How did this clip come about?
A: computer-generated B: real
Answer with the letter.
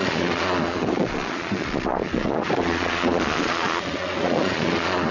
A